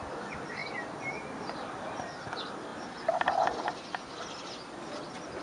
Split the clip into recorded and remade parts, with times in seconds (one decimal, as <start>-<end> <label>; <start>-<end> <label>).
0.0-5.4 recorded